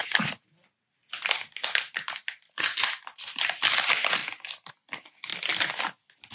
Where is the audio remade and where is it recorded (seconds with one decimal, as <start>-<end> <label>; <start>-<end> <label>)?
0.0-1.7 recorded; 1.7-4.2 remade; 4.2-4.7 recorded; 4.7-5.3 remade; 5.3-6.3 recorded